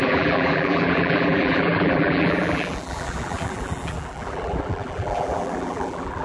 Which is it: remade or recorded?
remade